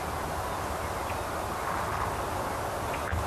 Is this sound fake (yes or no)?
no